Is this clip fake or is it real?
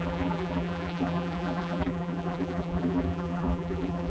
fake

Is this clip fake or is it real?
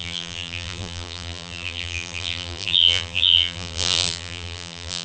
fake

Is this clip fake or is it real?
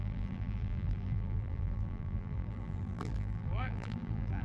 fake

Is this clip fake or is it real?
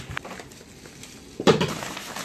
real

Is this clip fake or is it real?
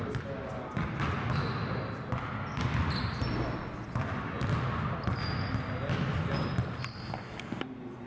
real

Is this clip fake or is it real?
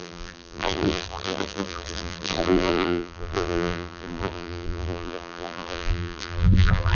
fake